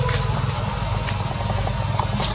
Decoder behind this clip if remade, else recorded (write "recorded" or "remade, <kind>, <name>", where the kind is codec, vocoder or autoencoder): recorded